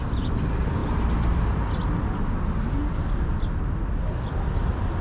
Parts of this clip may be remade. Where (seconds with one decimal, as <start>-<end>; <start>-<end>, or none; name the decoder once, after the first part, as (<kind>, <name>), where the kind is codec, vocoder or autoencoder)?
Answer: none